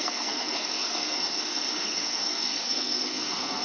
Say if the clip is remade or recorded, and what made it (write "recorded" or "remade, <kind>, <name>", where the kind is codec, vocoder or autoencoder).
remade, codec, SNAC